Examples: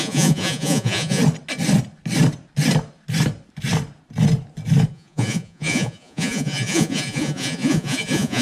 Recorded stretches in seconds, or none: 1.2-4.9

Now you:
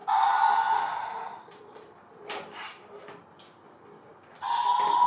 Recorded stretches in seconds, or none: 0.0-1.0; 3.0-5.1

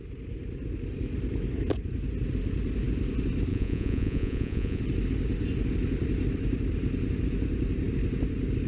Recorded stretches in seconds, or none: 0.0-3.5; 4.8-8.7

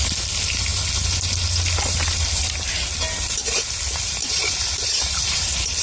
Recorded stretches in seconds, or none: 0.0-5.8

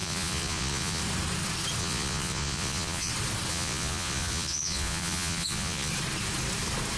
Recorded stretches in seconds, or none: 1.0-1.8; 3.1-3.5; 5.9-7.0

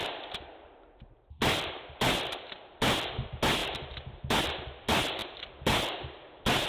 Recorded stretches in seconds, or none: 0.0-6.7